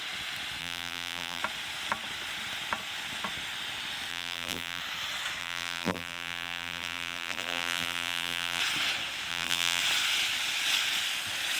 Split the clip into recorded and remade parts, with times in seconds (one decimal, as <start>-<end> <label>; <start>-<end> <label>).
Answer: 0.0-0.6 recorded; 0.6-1.4 remade; 1.4-4.1 recorded; 4.1-4.8 remade; 4.8-5.4 recorded; 5.4-8.6 remade; 8.6-9.3 recorded; 9.3-9.8 remade; 9.8-11.6 recorded